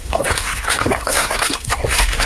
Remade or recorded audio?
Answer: remade